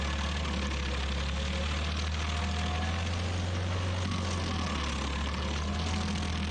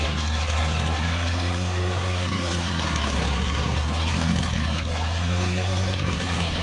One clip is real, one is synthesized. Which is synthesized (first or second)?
second